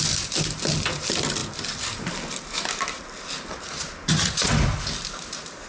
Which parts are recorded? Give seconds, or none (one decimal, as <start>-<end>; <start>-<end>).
0.0-5.7